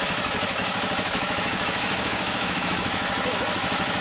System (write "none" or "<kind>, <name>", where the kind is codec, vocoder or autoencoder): autoencoder, DAC-VAE